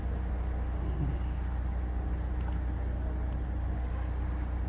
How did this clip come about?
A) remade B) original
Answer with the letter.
B